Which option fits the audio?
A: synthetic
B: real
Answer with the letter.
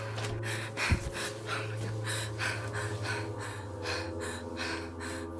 B